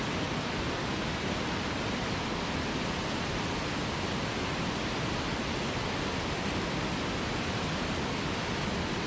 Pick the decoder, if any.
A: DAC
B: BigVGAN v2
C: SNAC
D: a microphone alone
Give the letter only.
D